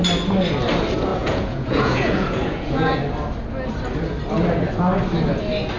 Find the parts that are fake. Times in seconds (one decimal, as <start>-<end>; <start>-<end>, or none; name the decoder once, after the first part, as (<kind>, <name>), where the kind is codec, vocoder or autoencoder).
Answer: 1.1-3.0 (vocoder, Vocos)